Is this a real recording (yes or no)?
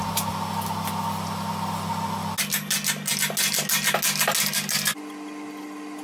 yes